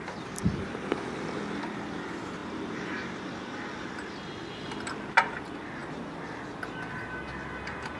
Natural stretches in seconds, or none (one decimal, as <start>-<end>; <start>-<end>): 0.0-2.4; 4.2-8.0